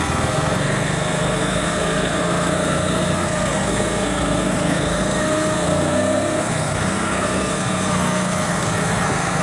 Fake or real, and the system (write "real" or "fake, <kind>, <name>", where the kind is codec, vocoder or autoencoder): fake, codec, SNAC